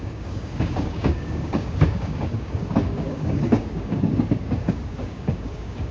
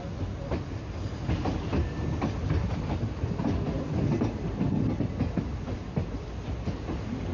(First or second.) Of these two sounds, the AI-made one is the first